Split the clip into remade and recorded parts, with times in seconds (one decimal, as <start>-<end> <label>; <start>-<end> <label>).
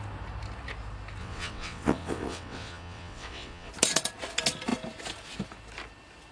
0.0-1.2 recorded; 1.2-3.7 remade; 3.7-6.3 recorded